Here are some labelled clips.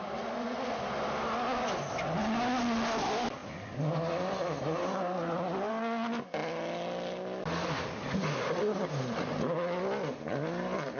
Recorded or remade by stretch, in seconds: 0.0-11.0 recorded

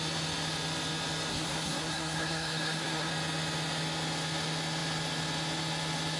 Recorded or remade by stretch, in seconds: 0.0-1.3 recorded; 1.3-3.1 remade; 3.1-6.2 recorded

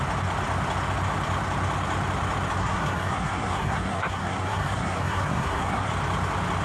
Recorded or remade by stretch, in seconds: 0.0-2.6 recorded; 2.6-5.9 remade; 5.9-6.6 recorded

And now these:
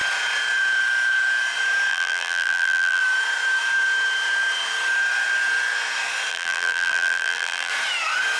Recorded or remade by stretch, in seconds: 0.0-1.9 recorded; 1.9-3.0 remade; 3.0-6.3 recorded; 6.3-7.7 remade; 7.7-8.4 recorded